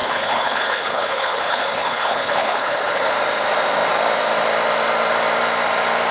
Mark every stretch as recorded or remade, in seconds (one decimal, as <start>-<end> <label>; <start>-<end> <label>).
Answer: 0.0-3.1 remade; 3.1-6.1 recorded